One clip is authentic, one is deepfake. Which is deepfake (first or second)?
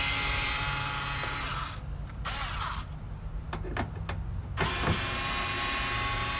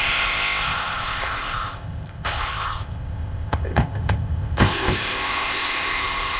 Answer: second